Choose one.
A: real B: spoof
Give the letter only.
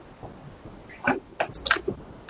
A